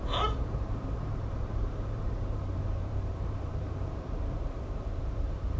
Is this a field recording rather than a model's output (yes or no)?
no